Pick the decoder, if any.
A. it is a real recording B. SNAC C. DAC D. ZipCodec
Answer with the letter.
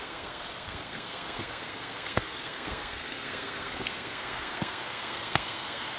B